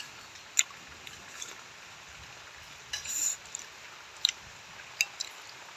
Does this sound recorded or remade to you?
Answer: recorded